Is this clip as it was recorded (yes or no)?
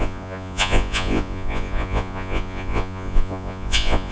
no